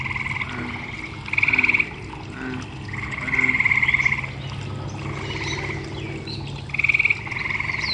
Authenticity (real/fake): real